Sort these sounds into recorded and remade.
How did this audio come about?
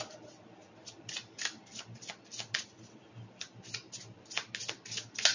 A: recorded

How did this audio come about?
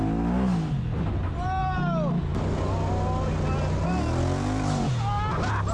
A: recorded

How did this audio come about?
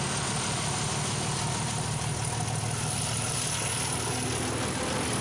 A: recorded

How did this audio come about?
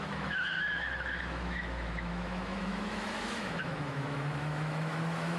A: remade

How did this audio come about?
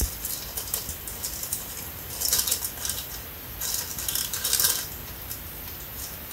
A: recorded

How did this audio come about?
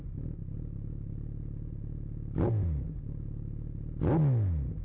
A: recorded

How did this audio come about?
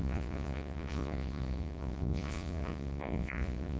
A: remade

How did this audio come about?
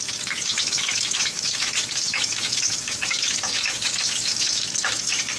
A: remade